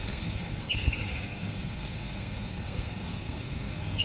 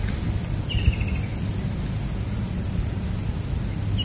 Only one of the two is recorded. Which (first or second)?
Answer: second